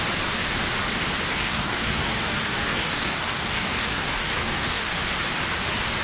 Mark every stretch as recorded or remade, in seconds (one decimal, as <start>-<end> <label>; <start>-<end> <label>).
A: 0.0-1.3 recorded; 1.3-4.9 remade; 4.9-6.0 recorded